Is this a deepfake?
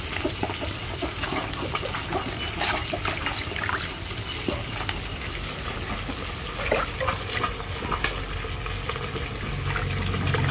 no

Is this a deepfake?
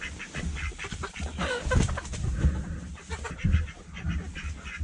no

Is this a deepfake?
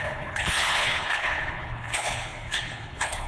yes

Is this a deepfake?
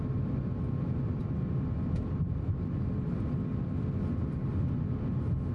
no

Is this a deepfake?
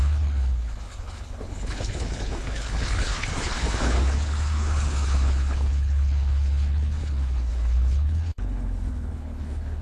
yes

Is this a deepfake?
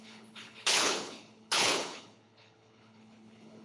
yes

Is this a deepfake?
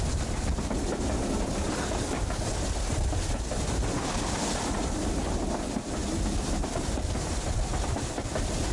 no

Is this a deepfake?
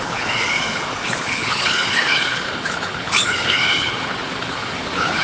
yes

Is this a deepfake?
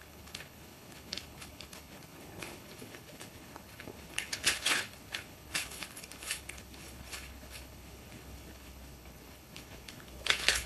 yes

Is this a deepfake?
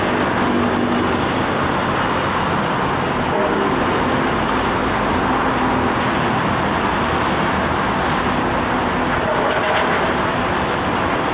no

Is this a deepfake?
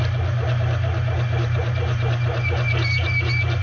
no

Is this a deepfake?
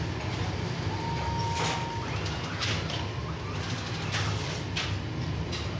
no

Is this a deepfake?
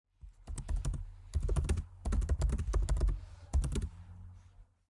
no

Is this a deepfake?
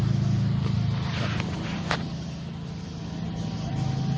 no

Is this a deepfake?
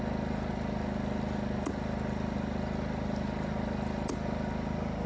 no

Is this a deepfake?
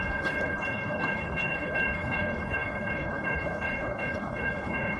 yes